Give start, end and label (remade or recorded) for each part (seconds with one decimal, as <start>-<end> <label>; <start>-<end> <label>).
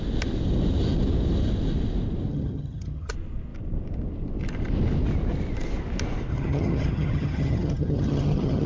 0.0-2.3 recorded; 2.3-3.1 remade; 3.1-6.3 recorded; 6.3-8.7 remade